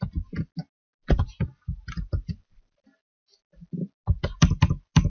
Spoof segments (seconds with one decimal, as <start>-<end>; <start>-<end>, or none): none